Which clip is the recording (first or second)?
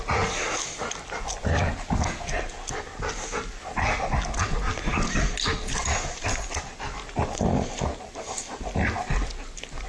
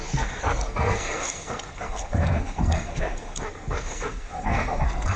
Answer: first